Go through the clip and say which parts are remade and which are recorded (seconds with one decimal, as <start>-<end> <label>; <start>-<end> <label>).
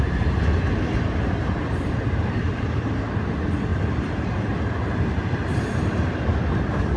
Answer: 0.0-3.7 recorded; 3.7-6.6 remade; 6.6-7.0 recorded